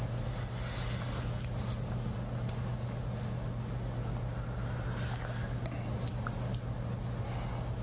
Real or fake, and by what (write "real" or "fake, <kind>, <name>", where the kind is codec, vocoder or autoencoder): real